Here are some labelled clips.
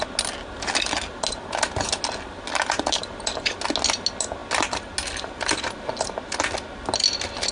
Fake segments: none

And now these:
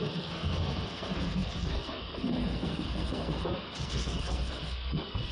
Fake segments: 0.0-5.3 (codec, SNAC)